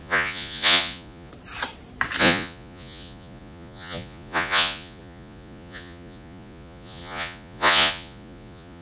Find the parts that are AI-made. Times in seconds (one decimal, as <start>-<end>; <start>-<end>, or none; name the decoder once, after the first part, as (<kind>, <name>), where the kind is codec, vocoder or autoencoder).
0.0-1.3 (vocoder, Vocos); 2.2-8.8

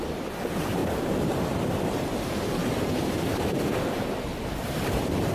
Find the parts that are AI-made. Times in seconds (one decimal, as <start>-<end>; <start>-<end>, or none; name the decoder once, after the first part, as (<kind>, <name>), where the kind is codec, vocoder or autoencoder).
0.0-5.3 (vocoder, BigVGAN v2)

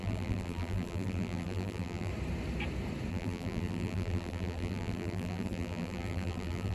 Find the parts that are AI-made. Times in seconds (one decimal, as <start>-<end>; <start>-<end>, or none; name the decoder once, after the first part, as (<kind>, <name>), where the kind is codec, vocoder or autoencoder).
0.0-2.1 (vocoder, BigVGAN v2); 3.1-6.7

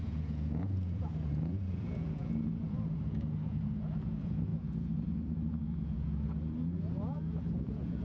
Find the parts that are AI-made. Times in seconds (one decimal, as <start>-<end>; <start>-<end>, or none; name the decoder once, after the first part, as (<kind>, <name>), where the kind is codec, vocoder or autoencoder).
0.0-8.0 (vocoder, Vocos)

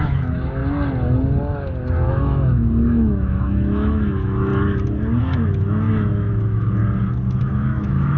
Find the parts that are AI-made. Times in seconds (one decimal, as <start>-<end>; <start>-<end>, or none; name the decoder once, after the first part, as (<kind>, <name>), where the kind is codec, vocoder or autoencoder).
0.0-0.6 (autoencoder, DAC-VAE); 2.1-4.5; 5.2-6.8; 7.4-8.2

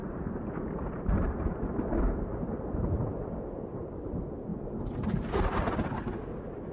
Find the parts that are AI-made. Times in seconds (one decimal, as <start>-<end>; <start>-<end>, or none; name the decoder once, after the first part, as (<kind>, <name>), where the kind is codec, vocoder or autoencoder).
0.0-4.0 (vocoder, BigVGAN v2)